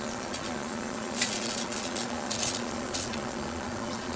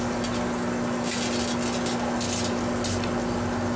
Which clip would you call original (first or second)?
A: second